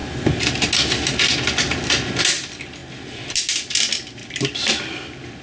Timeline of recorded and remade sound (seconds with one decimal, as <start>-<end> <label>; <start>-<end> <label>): 0.0-5.4 recorded